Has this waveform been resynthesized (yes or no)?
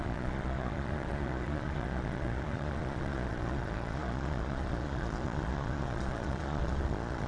yes